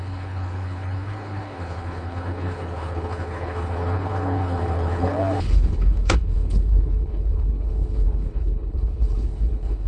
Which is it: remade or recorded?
remade